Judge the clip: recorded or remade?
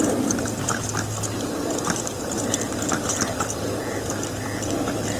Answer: recorded